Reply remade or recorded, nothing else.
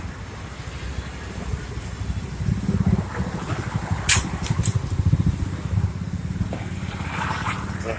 recorded